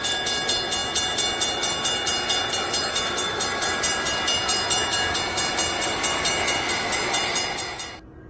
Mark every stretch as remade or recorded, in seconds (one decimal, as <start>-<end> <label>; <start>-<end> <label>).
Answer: 0.0-8.3 recorded